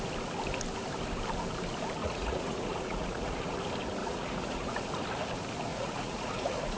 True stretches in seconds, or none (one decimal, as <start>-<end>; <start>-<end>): 0.0-2.0; 3.6-4.0; 4.9-5.7